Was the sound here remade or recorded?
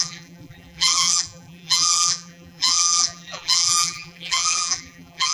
remade